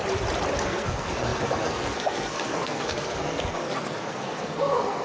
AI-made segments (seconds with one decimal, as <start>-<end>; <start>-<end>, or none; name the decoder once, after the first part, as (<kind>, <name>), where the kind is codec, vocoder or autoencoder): 0.6-5.0 (codec, SNAC)